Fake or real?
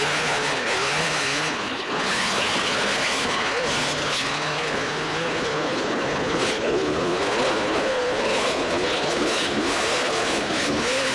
fake